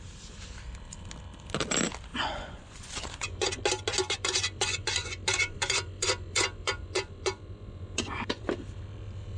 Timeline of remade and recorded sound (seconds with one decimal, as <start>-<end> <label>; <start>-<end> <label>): 0.0-2.1 recorded; 2.1-3.6 remade; 3.6-4.0 recorded; 4.0-8.4 remade; 8.4-9.4 recorded